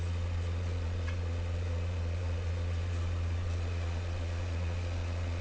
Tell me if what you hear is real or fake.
fake